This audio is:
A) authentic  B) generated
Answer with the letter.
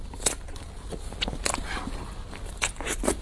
A